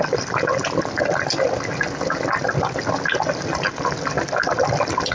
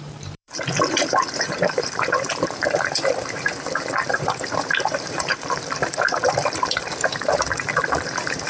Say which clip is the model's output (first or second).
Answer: second